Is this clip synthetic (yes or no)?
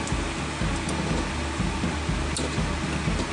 no